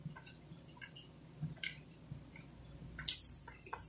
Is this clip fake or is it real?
real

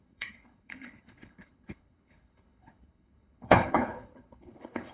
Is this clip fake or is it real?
fake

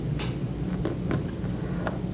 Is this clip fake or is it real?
real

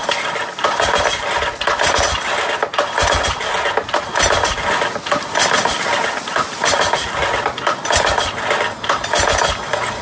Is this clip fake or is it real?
real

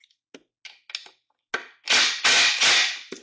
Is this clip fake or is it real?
real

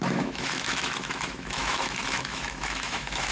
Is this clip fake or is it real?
fake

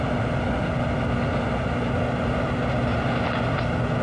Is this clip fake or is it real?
real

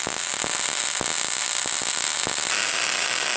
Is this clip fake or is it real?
real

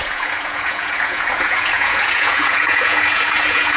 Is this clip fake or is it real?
fake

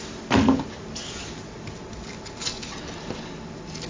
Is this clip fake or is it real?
real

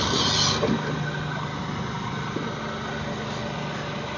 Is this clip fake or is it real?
real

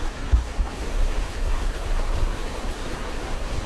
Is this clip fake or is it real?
fake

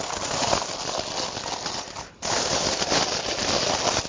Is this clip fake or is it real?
real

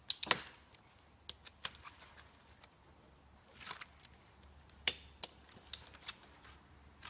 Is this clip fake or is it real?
real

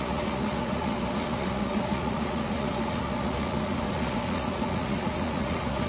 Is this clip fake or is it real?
fake